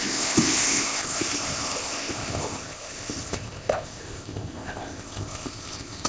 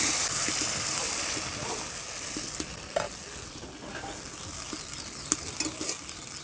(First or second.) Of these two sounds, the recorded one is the second